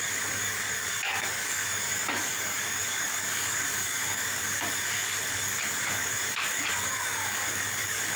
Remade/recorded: remade